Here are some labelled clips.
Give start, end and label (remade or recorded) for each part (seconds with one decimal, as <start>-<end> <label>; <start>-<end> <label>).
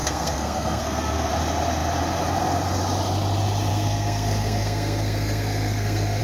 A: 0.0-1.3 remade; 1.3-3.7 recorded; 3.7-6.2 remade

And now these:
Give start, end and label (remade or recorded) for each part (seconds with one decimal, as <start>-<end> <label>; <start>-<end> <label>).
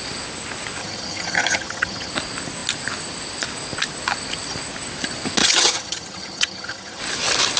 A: 0.0-0.8 recorded; 0.8-2.1 remade; 2.1-5.4 recorded; 5.4-7.0 remade; 7.0-7.6 recorded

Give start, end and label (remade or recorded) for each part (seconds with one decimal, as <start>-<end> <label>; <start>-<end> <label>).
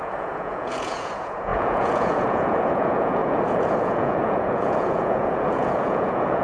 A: 0.0-6.4 remade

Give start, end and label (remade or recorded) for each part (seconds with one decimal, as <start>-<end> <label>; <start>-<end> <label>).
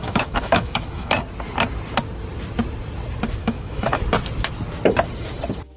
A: 0.0-1.1 remade; 1.1-3.4 recorded; 3.4-4.0 remade; 4.0-5.8 recorded